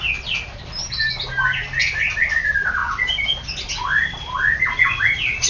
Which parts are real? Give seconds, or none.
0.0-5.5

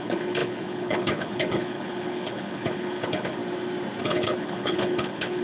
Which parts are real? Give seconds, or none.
3.4-4.0

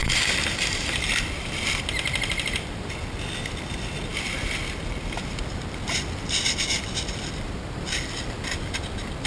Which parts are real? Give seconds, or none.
4.1-5.5

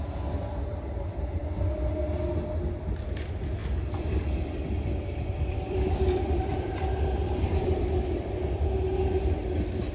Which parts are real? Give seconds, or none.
0.0-3.6; 7.8-9.9

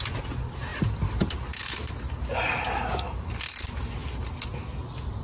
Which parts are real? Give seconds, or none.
0.0-5.2